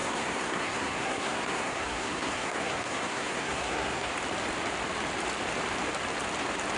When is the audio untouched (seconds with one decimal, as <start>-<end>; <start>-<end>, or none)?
4.1-6.8